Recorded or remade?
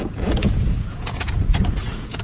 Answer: remade